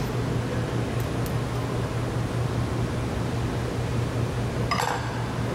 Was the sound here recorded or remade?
recorded